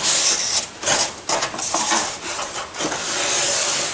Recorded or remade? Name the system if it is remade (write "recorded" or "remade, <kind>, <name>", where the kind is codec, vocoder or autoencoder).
recorded